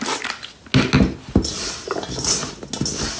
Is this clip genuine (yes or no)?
yes